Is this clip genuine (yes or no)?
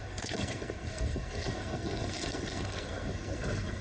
no